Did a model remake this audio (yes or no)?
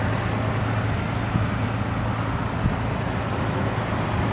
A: no